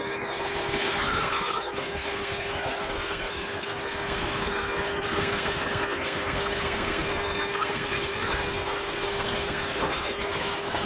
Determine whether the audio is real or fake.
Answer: fake